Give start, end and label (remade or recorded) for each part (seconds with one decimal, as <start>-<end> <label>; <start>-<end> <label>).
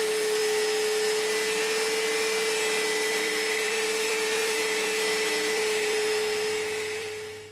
0.0-0.4 remade; 0.4-3.1 recorded; 3.1-7.5 remade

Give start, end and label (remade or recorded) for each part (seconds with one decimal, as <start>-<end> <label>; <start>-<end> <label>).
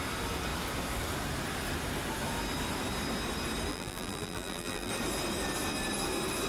0.0-3.7 recorded; 3.7-4.9 remade; 4.9-6.5 recorded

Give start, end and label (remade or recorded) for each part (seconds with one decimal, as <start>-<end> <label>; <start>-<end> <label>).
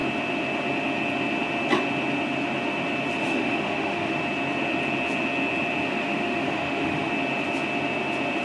0.0-3.2 recorded; 3.2-4.2 remade; 4.2-5.9 recorded; 5.9-7.1 remade; 7.1-8.4 recorded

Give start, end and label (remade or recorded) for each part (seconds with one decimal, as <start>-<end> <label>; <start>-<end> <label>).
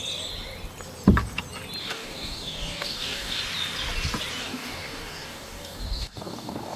0.0-1.8 recorded; 1.8-3.4 remade; 3.4-4.4 recorded; 4.4-6.8 remade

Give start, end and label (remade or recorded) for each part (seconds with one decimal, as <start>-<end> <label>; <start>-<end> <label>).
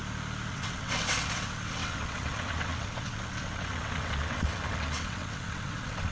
0.0-0.5 recorded; 0.5-6.1 remade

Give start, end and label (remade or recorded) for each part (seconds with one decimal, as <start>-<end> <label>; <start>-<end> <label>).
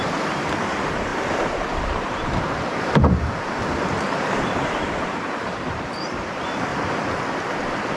0.0-6.7 remade; 6.7-7.3 recorded; 7.3-8.0 remade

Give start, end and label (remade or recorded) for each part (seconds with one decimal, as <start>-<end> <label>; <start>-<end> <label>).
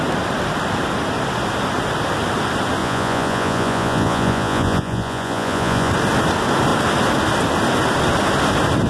0.0-2.8 recorded; 2.8-5.9 remade; 5.9-8.9 recorded